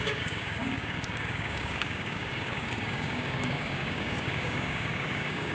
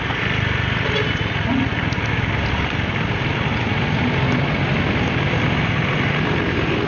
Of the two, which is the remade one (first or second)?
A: first